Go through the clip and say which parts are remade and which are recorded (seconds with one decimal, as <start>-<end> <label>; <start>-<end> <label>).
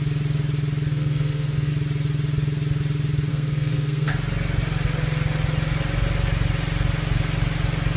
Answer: 0.0-0.9 recorded; 0.9-1.7 remade; 1.7-3.3 recorded; 3.3-4.1 remade; 4.1-8.0 recorded